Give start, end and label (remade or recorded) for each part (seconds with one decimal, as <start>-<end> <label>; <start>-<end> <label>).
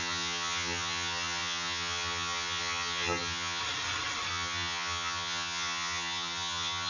0.0-3.6 remade; 3.6-4.3 recorded; 4.3-6.9 remade